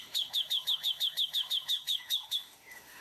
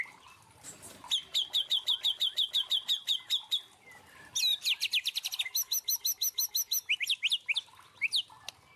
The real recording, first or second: second